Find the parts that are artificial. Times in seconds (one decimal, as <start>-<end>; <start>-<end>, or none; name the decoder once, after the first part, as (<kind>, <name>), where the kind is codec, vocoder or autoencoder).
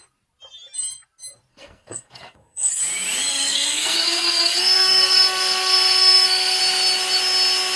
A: 1.5-2.8 (codec, SNAC); 3.3-6.6